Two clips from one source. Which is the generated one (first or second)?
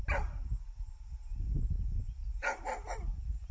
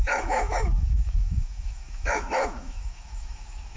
second